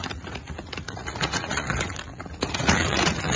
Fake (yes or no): yes